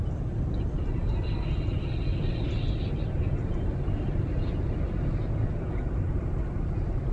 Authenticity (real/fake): real